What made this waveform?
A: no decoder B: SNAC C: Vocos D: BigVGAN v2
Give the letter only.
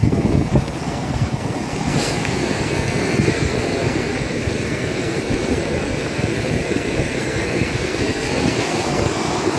B